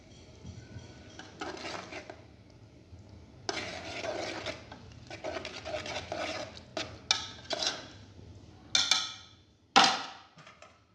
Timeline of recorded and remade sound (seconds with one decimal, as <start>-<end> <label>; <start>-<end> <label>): 0.0-10.9 recorded

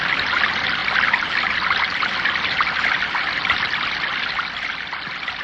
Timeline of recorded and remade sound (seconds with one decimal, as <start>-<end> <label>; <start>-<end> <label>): 0.0-5.4 recorded